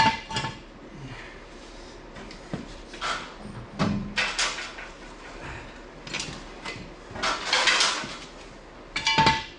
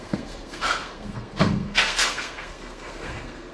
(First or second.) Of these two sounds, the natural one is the first